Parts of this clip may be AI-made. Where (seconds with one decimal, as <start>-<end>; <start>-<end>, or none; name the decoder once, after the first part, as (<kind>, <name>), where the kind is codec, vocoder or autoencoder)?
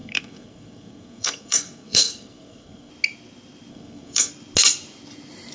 0.0-2.9 (codec, SNAC); 3.7-4.3